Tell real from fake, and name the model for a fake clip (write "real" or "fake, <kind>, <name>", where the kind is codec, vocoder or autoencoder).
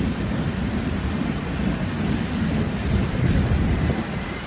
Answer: fake, vocoder, BigVGAN v2